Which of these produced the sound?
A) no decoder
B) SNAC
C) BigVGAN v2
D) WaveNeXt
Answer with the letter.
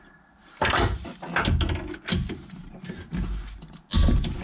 A